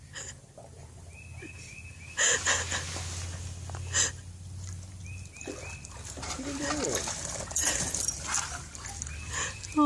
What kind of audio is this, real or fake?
real